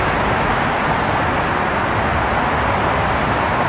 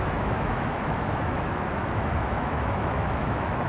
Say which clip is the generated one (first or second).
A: second